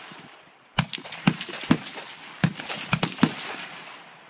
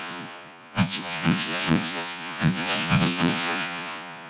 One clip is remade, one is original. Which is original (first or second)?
first